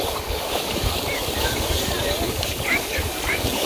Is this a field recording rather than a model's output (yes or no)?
no